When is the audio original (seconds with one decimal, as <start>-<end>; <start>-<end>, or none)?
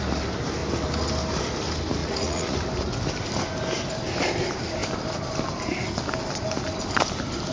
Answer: 0.0-2.0; 2.6-7.5